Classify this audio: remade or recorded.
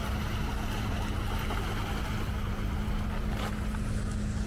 recorded